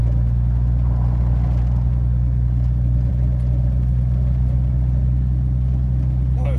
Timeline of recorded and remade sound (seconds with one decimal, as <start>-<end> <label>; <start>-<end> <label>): 0.0-6.6 recorded